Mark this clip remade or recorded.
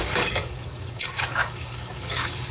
remade